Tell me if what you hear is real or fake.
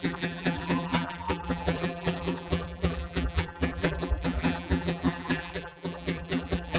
fake